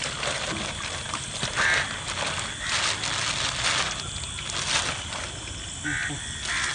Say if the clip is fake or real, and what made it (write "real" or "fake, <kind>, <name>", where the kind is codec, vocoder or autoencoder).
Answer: real